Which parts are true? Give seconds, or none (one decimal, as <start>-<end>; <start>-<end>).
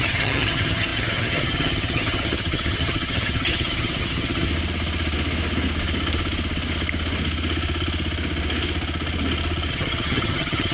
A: 4.5-9.7